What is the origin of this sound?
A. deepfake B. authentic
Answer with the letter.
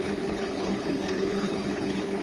A